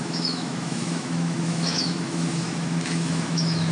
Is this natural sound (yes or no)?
no